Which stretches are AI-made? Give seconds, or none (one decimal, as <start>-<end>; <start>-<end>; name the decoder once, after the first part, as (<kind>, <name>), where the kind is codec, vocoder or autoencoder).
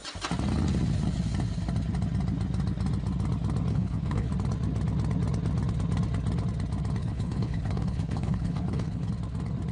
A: 3.7-4.3 (codec, HILCodec); 7.0-9.1